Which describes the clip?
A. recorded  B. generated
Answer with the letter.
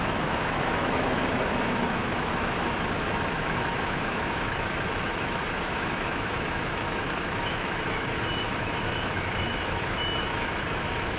B